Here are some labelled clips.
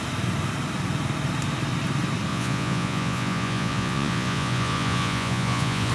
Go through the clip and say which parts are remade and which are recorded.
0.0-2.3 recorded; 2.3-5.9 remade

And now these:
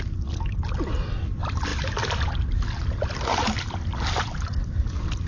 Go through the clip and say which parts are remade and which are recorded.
0.0-5.3 remade

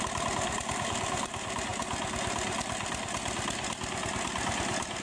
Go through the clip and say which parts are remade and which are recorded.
0.0-5.0 remade

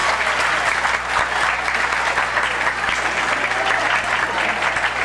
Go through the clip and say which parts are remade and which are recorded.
0.0-5.0 recorded

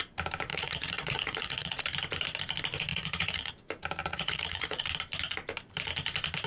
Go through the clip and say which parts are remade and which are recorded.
0.0-0.5 recorded; 0.5-1.8 remade; 1.8-2.9 recorded; 2.9-3.5 remade; 3.5-4.0 recorded; 4.0-4.8 remade; 4.8-6.5 recorded

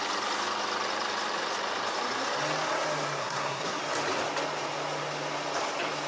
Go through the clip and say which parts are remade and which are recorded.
0.0-3.2 recorded; 3.2-3.8 remade; 3.8-6.1 recorded